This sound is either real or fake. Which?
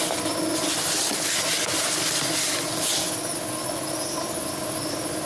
real